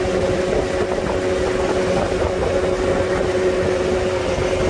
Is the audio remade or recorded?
recorded